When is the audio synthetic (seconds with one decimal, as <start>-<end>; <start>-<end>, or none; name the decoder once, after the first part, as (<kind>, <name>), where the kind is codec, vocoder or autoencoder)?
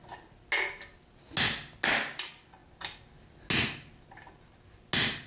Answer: none